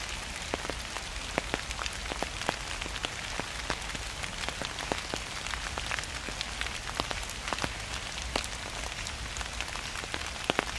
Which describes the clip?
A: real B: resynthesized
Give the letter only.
A